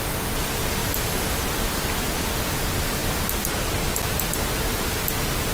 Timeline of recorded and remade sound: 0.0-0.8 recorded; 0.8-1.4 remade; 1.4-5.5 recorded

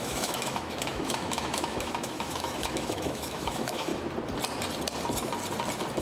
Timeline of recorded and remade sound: 0.0-3.9 remade; 3.9-6.0 recorded

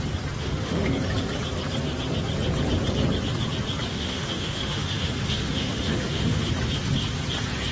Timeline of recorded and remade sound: 0.0-0.4 recorded; 0.4-0.9 remade; 0.9-3.9 recorded; 3.9-6.5 remade; 6.5-7.7 recorded